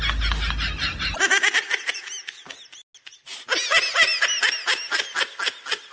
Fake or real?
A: real